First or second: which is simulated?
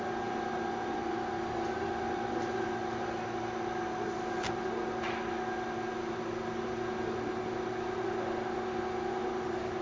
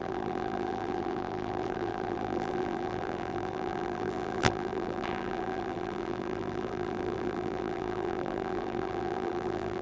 second